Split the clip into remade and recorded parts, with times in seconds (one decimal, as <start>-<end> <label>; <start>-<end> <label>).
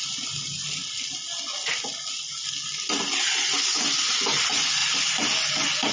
0.0-5.9 recorded